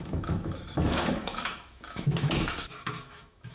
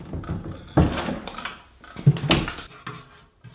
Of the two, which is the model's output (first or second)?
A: first